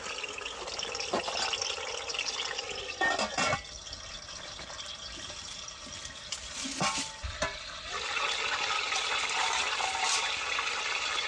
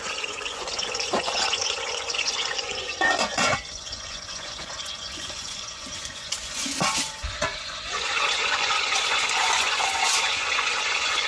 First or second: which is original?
first